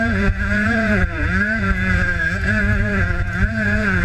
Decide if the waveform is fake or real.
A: fake